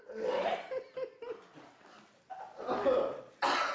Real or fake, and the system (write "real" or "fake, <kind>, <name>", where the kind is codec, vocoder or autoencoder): real